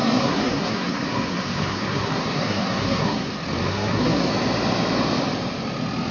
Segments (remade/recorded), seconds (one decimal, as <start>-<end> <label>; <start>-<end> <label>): 0.0-3.3 remade; 3.3-3.7 recorded; 3.7-4.3 remade; 4.3-6.1 recorded